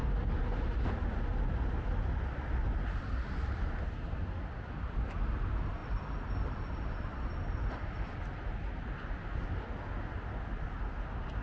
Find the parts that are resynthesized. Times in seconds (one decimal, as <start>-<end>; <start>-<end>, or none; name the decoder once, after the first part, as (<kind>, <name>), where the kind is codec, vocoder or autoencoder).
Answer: 5.8-8.2 (vocoder, BigVGAN v2)